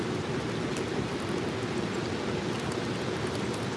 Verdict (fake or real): real